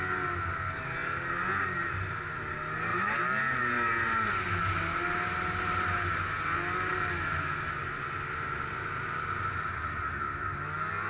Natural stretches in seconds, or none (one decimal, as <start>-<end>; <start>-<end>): 0.0-2.9; 3.6-11.1